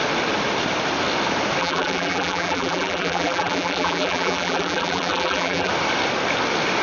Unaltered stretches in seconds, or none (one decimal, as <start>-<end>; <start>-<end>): 0.0-1.6; 5.7-6.8